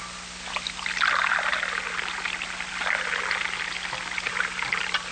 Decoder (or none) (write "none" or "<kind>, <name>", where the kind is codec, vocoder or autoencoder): none